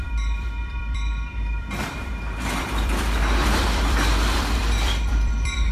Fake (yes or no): yes